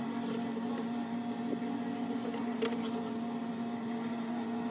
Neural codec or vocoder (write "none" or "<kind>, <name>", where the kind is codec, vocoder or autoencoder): none